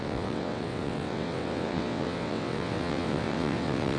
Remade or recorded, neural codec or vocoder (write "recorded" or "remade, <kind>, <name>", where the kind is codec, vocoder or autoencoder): remade, vocoder, WaveNeXt